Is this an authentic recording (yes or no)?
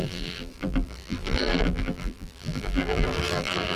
no